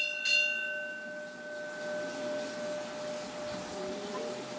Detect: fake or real real